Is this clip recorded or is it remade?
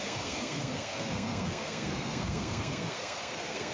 remade